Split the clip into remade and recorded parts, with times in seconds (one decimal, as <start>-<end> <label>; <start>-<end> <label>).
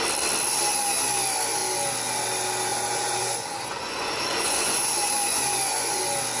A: 0.0-2.7 recorded; 2.7-6.0 remade; 6.0-6.4 recorded